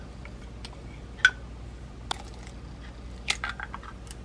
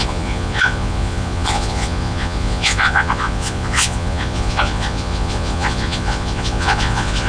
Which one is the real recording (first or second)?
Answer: first